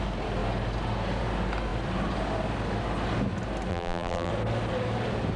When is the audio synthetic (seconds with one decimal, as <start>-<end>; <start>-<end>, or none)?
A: 3.7-4.3